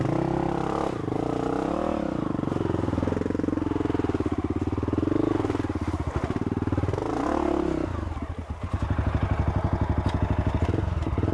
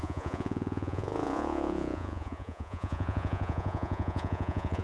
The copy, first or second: second